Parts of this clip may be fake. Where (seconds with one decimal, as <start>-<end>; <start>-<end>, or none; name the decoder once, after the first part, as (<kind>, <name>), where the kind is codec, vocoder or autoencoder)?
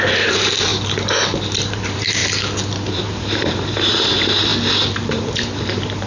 0.0-0.7 (vocoder, BigVGAN v2); 1.7-2.2; 2.9-4.5; 5.1-6.1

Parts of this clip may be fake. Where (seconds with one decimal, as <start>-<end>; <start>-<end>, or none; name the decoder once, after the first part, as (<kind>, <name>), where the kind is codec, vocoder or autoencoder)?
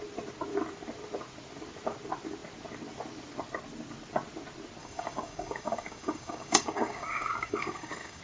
4.8-8.2 (codec, DAC)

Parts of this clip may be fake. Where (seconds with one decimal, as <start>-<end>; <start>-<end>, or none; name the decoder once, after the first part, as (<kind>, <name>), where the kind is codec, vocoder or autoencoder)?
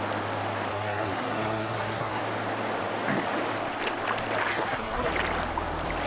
0.7-2.2 (codec, SNAC); 4.5-5.1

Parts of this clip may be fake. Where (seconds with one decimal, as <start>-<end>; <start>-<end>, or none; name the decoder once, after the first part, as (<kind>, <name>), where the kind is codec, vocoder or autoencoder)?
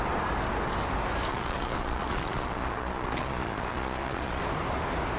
1.3-4.4 (vocoder, Vocos)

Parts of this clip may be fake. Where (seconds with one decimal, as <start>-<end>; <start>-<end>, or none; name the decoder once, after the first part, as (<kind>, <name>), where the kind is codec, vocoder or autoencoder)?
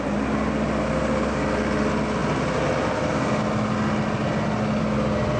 none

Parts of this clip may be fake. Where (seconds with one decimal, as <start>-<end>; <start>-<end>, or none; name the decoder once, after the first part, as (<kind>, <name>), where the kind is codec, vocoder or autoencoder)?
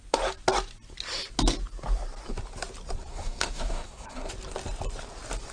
3.1-4.3 (codec, SNAC)